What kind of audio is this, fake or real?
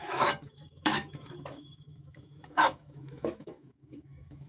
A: fake